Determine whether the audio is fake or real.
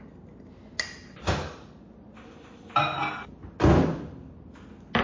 real